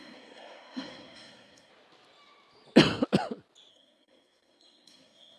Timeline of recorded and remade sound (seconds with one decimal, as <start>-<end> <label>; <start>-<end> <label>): 0.0-1.7 remade; 1.7-3.7 recorded; 3.7-5.4 remade